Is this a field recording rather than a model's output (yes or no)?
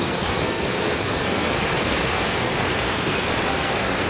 no